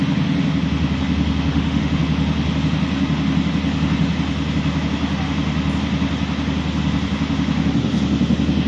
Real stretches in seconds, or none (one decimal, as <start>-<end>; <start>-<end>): 0.0-1.5; 2.0-8.7

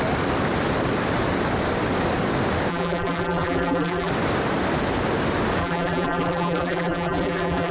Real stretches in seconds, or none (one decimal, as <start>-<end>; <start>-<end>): 0.0-2.7; 4.1-5.6

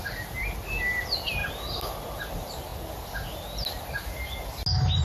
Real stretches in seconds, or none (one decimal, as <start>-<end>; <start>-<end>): 0.0-5.0

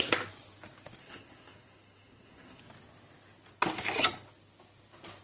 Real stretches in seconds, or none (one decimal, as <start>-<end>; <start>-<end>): 0.0-1.0; 2.6-5.2

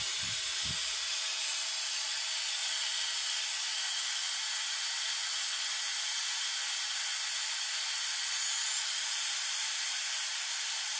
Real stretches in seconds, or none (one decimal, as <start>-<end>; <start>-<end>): 0.0-2.6; 3.5-8.1

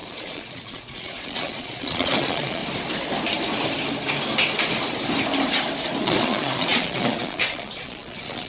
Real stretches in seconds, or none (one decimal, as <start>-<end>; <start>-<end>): 2.6-6.0

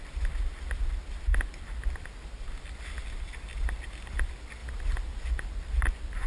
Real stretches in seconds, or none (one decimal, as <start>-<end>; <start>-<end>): 0.0-6.3